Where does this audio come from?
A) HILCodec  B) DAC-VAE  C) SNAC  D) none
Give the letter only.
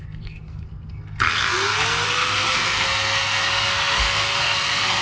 C